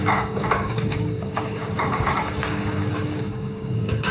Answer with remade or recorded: remade